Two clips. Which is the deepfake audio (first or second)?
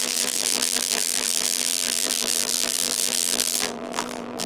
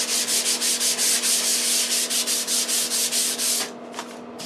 first